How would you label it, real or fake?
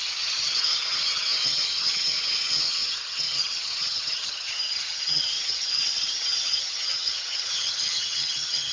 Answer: fake